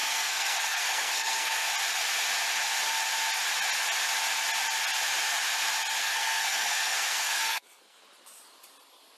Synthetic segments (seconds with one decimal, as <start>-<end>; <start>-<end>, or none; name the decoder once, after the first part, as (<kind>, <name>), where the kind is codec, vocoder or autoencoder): 0.0-1.7 (codec, SNAC); 6.0-8.0